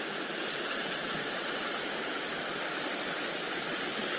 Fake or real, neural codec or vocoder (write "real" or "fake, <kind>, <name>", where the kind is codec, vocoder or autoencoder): real